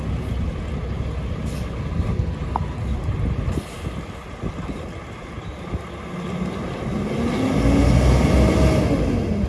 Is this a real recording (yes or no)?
yes